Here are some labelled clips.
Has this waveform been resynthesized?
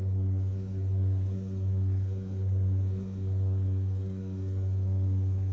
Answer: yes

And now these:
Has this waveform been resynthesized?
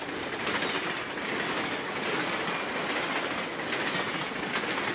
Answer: no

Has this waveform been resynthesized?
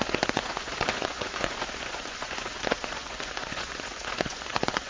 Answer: yes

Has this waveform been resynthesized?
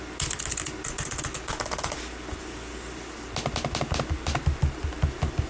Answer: no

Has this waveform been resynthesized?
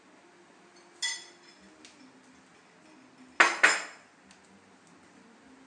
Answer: no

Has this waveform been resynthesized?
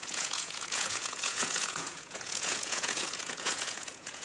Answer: yes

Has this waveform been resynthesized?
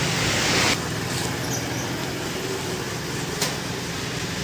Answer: no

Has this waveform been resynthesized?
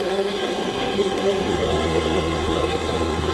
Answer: yes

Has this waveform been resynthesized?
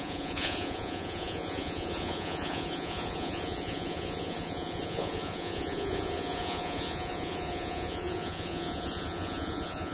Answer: yes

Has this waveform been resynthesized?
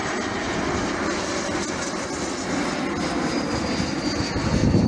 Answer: no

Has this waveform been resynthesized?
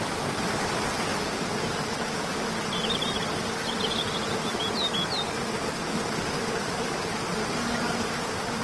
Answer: yes